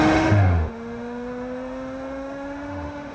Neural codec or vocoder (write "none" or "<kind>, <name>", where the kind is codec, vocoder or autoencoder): autoencoder, DAC-VAE